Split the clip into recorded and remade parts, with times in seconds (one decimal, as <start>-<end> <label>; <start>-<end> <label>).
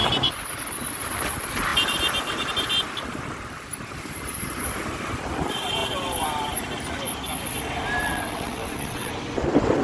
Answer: 0.0-8.0 recorded; 8.0-9.1 remade; 9.1-9.8 recorded